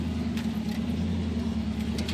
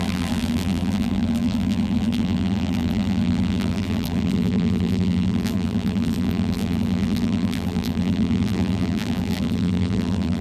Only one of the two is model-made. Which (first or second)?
second